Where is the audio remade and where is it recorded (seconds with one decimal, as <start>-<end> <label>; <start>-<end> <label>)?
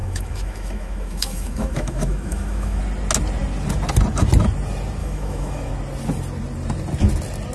0.0-2.8 remade; 2.8-5.0 recorded; 5.0-5.7 remade; 5.7-7.5 recorded